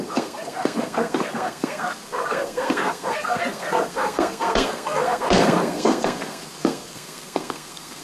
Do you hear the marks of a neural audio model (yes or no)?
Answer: yes